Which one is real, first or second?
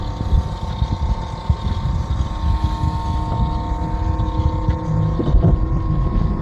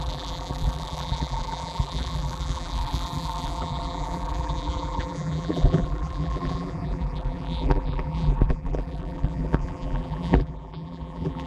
first